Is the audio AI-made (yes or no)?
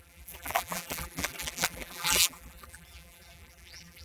yes